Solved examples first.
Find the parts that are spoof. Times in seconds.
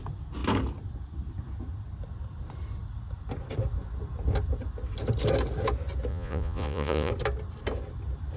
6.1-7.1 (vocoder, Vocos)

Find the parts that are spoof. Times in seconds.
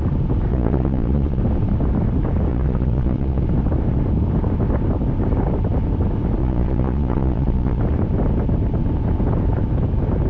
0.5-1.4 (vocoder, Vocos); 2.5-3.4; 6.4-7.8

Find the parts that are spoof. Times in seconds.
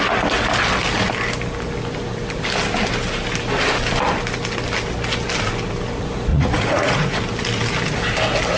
6.3-7.2 (vocoder, Vocos)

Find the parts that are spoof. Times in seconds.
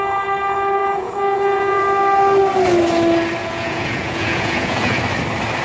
0.8-1.8 (vocoder, Vocos); 3.4-5.0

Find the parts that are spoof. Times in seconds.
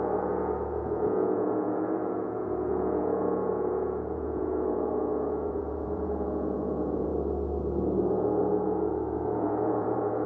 0.0-7.1 (vocoder, Vocos); 8.1-10.3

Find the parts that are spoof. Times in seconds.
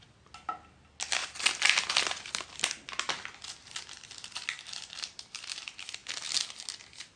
none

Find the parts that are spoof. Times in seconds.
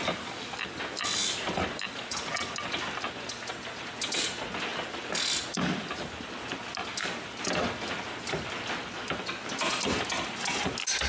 none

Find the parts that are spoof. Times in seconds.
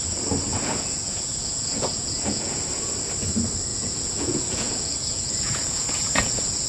0.5-2.9 (vocoder, Vocos); 3.7-6.7